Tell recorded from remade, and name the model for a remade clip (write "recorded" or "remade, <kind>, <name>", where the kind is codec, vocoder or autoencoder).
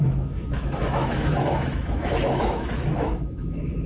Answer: remade, autoencoder, DAC-VAE